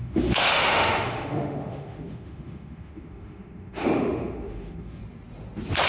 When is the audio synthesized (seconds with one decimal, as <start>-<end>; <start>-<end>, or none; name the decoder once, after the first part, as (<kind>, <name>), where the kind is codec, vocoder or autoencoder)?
0.0-5.0 (autoencoder, DAC-VAE)

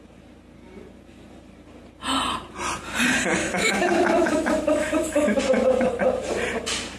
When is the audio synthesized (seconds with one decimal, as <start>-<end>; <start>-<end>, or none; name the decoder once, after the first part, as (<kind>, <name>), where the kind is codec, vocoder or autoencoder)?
3.4-5.4 (autoencoder, DAC-VAE)

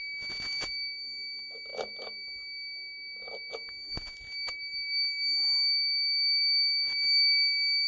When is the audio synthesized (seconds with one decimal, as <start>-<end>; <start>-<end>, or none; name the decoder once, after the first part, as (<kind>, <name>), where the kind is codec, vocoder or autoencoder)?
none

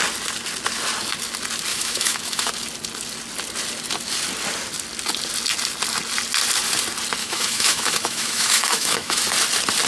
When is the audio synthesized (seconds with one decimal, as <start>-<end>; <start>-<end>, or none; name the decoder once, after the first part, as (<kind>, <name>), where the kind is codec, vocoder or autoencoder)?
1.7-2.5 (autoencoder, DAC-VAE); 7.2-9.2

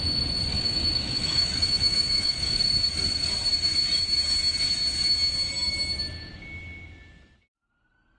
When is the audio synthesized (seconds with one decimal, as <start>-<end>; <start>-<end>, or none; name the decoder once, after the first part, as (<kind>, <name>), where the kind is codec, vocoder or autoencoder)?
0.5-2.6 (autoencoder, DAC-VAE)

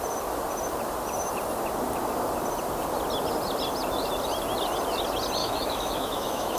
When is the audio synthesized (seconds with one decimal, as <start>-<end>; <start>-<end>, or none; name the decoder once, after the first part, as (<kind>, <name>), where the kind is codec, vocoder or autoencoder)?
5.4-6.6 (autoencoder, DAC-VAE)

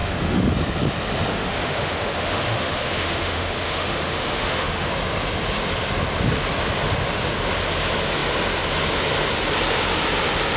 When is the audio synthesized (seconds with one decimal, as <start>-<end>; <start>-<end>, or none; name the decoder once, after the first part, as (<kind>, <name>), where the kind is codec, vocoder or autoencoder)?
0.0-0.5 (autoencoder, DAC-VAE); 1.3-4.9

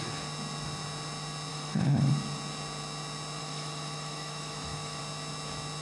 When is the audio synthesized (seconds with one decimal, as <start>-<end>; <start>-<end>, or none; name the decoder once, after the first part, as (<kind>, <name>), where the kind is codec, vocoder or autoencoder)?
1.5-2.1 (autoencoder, DAC-VAE); 3.4-5.0